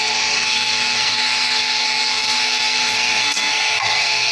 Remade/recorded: remade